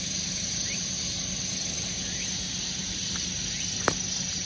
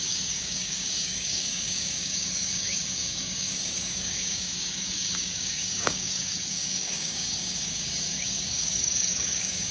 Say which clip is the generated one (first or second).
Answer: second